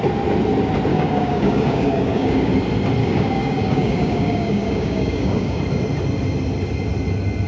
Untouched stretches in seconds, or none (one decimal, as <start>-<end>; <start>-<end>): 0.0-0.9; 2.5-3.0; 5.6-7.5